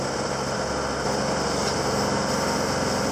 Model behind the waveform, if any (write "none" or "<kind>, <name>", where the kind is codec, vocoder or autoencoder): none